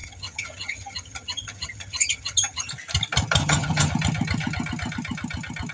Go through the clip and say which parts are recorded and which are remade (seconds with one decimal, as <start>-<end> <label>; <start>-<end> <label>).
0.0-2.7 remade; 2.7-3.4 recorded; 3.4-3.9 remade; 3.9-5.7 recorded